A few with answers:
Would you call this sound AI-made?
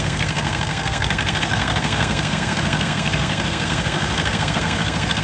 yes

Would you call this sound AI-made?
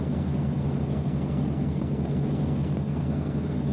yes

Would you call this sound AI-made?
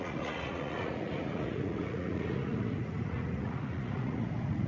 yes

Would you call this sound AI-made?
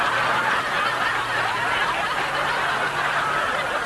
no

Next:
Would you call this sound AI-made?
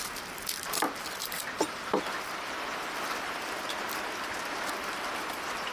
yes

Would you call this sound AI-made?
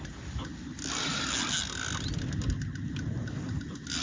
no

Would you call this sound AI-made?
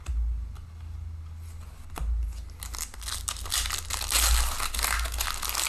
no